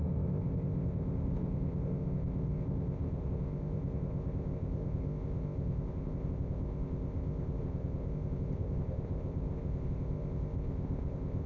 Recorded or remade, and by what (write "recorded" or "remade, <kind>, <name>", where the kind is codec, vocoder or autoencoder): remade, codec, ZipCodec